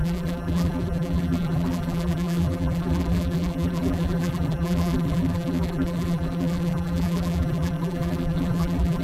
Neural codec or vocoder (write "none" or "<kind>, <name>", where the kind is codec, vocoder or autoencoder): vocoder, BigVGAN v2